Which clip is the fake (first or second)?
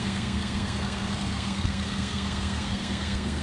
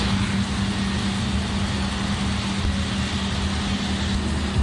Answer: first